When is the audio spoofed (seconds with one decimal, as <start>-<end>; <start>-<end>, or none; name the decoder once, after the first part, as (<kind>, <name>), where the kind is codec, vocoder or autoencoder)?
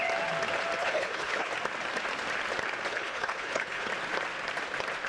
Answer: 0.8-1.5 (codec, HILCodec); 2.9-3.9